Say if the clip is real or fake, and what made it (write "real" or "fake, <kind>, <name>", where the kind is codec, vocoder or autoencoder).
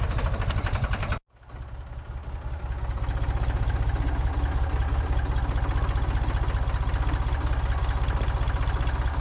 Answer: real